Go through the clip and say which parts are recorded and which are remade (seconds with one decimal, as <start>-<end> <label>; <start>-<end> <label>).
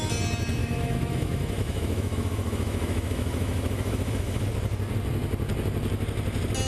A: 0.0-0.6 recorded; 0.6-4.4 remade; 4.4-6.7 recorded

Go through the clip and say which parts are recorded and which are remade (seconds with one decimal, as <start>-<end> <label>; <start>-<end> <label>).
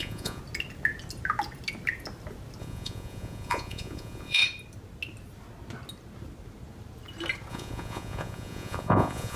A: 0.0-0.4 remade; 0.4-2.6 recorded; 2.6-4.4 remade; 4.4-7.5 recorded; 7.5-9.4 remade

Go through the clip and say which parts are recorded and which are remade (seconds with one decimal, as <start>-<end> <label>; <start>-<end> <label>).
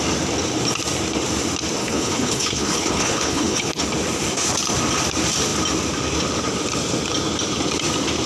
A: 0.0-1.8 recorded; 1.8-3.8 remade; 3.8-8.3 recorded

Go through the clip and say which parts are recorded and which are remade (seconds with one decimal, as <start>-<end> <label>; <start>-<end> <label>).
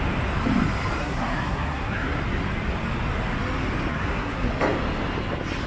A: 0.0-1.0 recorded; 1.0-2.2 remade; 2.2-3.9 recorded; 3.9-4.5 remade; 4.5-5.7 recorded